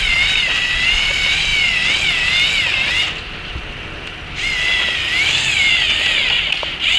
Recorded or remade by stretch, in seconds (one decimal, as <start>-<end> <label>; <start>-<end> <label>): 0.0-7.0 recorded